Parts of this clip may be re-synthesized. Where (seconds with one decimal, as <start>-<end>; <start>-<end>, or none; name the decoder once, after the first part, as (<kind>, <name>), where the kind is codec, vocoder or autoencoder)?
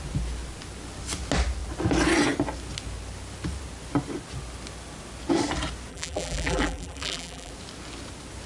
5.9-7.5 (vocoder, BigVGAN v2)